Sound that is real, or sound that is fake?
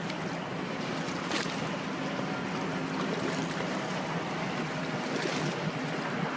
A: real